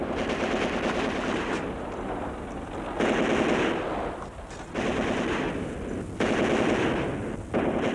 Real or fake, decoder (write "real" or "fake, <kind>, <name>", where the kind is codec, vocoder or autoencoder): real